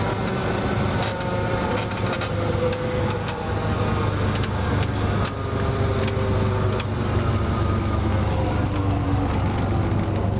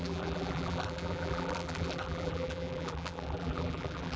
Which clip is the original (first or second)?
first